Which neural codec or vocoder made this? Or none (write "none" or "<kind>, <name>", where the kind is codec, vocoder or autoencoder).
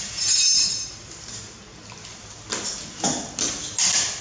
none